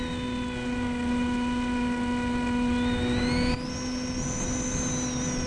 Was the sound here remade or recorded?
recorded